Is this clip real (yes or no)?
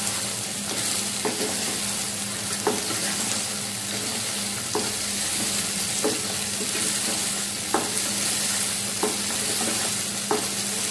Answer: yes